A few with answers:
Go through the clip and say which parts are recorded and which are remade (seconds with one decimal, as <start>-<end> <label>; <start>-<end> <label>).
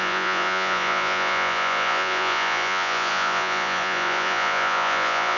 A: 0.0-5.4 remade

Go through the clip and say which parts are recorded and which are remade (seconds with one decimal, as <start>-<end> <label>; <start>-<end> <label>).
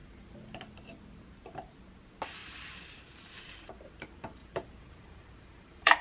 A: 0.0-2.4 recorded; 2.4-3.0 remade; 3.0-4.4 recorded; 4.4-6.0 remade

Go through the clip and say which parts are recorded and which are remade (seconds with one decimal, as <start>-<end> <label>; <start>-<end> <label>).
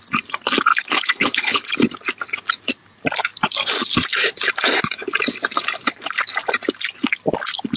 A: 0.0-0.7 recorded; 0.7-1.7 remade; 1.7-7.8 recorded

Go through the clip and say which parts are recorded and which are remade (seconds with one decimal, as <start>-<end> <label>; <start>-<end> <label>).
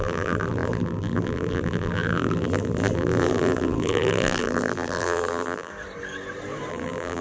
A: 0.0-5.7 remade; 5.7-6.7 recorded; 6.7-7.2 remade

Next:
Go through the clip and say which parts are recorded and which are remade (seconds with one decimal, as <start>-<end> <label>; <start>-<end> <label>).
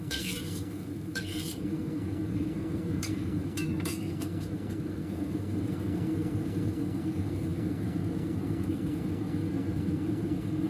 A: 0.0-10.7 remade